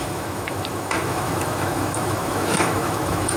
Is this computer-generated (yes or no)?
yes